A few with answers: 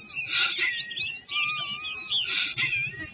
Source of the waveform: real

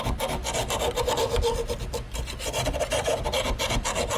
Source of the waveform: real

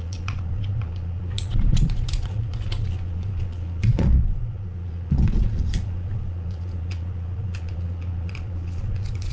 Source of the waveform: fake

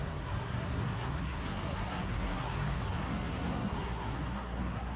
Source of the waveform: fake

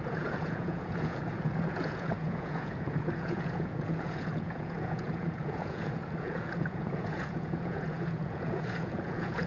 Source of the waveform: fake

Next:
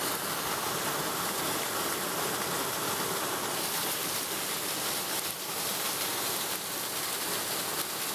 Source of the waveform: real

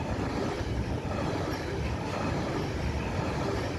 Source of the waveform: real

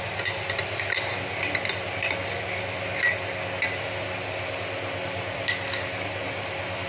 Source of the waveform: real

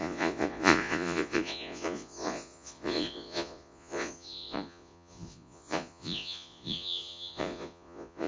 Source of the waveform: fake